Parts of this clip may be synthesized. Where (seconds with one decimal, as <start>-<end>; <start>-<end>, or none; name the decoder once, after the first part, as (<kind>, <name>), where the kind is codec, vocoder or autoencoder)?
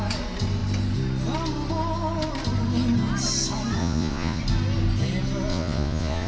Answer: 3.8-4.4 (vocoder, Vocos); 5.5-6.3